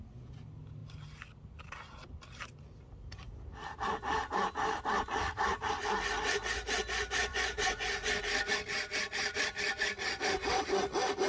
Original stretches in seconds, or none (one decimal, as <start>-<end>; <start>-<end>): 0.0-7.3; 8.2-11.3